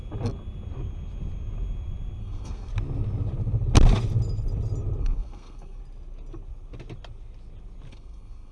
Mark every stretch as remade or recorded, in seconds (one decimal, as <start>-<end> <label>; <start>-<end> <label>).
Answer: 0.0-2.2 recorded; 2.2-2.7 remade; 2.7-5.0 recorded; 5.0-5.8 remade; 5.8-7.9 recorded; 7.9-8.5 remade